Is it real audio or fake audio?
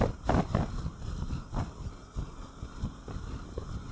real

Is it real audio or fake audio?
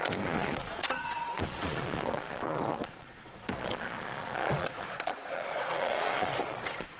fake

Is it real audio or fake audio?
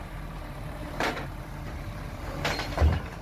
fake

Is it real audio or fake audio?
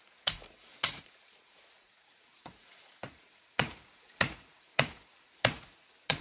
fake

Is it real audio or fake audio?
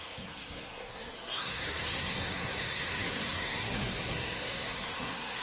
fake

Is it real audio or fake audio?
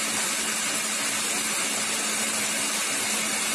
real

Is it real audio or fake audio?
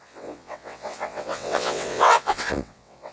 fake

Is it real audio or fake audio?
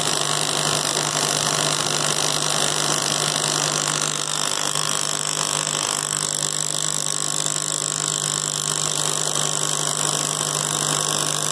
real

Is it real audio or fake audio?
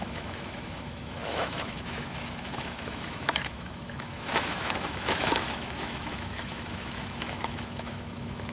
fake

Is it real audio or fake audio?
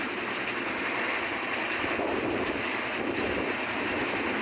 fake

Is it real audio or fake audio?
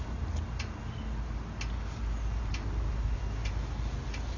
real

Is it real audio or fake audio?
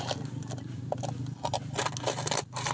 real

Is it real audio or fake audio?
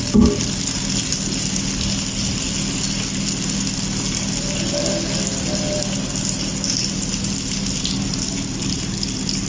real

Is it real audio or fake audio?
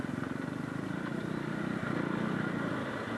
real